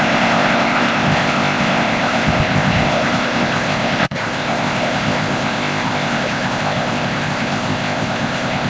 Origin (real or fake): fake